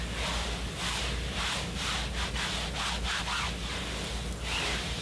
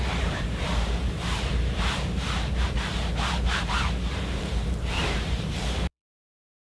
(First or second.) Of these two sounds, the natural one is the first